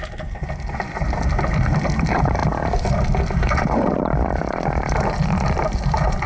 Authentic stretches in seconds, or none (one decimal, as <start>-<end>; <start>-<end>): 0.0-6.3